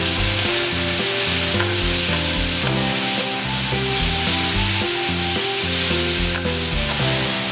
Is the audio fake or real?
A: real